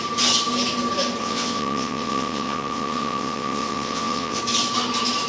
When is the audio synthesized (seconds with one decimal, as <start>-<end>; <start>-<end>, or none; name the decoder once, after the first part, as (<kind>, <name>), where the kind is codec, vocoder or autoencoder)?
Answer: 1.2-4.4 (vocoder, WaveNeXt)